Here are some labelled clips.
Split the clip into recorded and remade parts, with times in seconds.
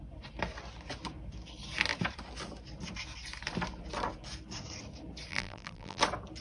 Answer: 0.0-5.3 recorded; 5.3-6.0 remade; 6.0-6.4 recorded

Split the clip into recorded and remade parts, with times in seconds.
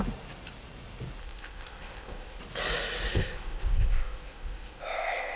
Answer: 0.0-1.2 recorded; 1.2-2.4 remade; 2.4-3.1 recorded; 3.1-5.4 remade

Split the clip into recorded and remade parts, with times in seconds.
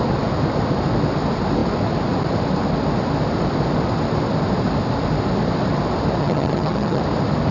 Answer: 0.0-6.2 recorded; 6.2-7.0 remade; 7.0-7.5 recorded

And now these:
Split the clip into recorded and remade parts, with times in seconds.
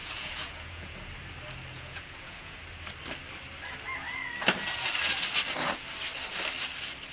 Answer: 0.0-1.1 remade; 1.1-1.7 recorded; 1.7-2.6 remade; 2.6-7.1 recorded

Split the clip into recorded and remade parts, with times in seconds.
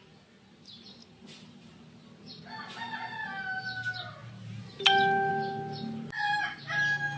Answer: 0.0-1.0 recorded; 1.0-1.8 remade; 1.8-2.2 recorded; 2.2-3.0 remade; 3.0-7.2 recorded